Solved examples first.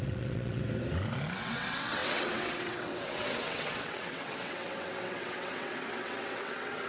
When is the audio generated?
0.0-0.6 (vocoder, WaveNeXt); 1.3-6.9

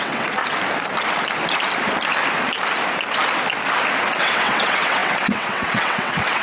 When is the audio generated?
0.0-0.4 (vocoder, WaveNeXt); 4.2-6.4

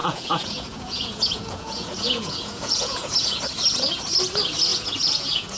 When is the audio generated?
0.0-3.4 (vocoder, Vocos); 4.7-5.6